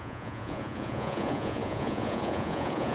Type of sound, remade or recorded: remade